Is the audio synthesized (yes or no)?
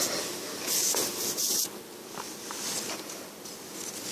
no